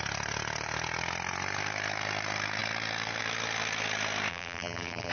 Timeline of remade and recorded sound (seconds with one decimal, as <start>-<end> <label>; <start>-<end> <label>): 0.0-4.3 recorded; 4.3-5.1 remade